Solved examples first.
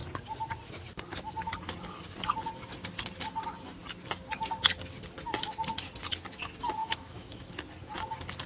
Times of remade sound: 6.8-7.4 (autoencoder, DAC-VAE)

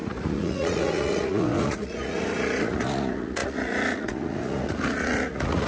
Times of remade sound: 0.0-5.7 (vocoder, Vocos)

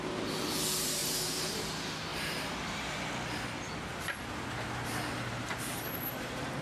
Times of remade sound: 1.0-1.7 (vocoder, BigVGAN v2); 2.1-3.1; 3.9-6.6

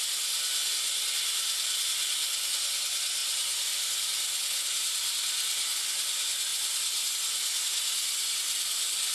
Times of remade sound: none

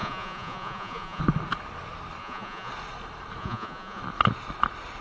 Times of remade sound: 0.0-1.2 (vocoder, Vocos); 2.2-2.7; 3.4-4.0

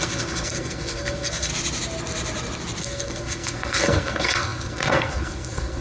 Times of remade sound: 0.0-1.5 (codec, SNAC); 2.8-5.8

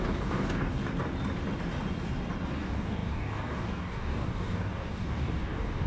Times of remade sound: 0.0-0.8 (codec, DAC); 2.6-5.9